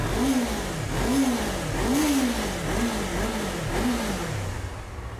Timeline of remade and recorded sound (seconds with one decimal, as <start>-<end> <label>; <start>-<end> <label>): 0.0-5.2 recorded